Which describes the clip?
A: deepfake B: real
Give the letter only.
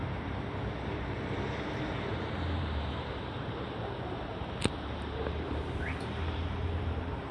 A